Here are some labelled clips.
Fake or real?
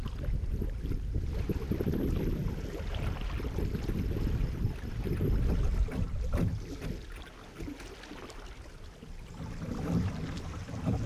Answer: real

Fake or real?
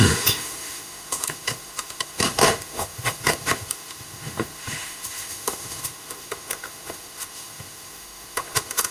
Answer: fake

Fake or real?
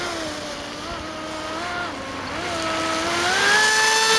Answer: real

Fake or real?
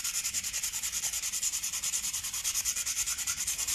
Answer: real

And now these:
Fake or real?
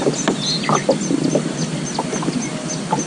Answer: real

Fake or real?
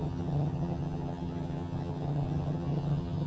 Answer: fake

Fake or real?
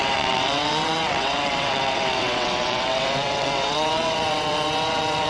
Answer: fake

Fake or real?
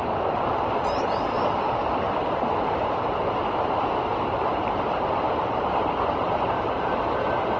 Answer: real